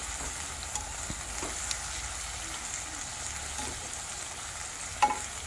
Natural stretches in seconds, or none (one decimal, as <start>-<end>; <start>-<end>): 0.0-5.5